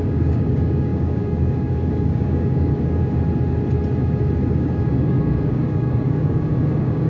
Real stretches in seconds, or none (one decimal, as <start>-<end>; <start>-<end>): 3.0-4.5